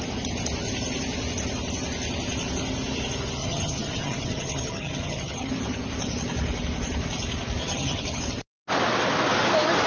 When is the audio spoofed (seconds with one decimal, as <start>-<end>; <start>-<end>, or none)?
3.4-5.5; 7.6-8.2

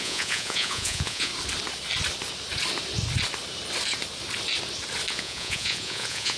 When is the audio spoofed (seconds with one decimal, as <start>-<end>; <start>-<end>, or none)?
0.0-1.3; 5.1-6.4

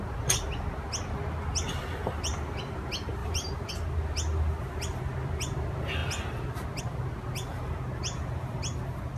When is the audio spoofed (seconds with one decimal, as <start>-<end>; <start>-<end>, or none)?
3.2-3.7

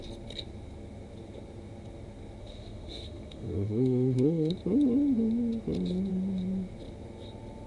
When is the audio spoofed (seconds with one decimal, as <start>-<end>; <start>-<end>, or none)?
2.4-4.5

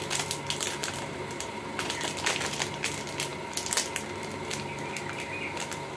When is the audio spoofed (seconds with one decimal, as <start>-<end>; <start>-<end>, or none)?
0.8-1.9